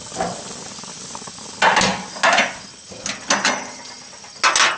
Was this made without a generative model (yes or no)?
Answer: yes